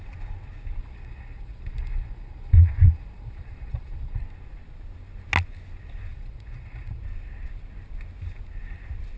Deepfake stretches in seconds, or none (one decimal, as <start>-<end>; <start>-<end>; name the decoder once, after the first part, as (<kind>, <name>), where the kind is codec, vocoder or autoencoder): 0.8-4.2 (vocoder, Vocos); 6.1-7.0

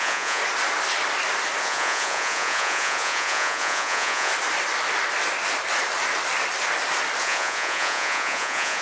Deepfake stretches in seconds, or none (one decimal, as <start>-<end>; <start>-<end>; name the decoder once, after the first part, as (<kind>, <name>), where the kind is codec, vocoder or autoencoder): 0.0-0.4 (vocoder, Vocos); 1.6-4.3; 7.2-8.8